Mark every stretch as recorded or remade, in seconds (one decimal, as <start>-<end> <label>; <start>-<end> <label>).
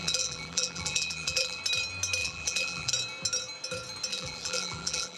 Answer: 0.0-1.6 remade; 1.6-2.2 recorded; 2.2-2.9 remade; 2.9-4.1 recorded; 4.1-5.2 remade